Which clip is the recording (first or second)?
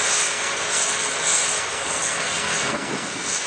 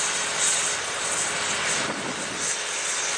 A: second